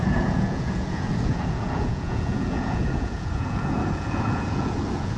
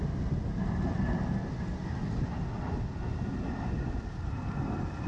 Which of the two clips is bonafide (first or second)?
second